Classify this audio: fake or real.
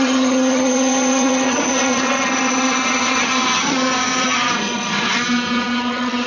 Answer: fake